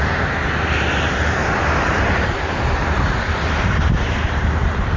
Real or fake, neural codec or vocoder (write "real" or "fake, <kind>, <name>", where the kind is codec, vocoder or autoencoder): fake, vocoder, BigVGAN v2